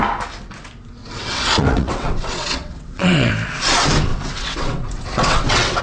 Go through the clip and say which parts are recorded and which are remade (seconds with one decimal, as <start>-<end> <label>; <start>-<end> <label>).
0.0-1.0 recorded; 1.0-3.3 remade; 3.3-4.1 recorded; 4.1-5.8 remade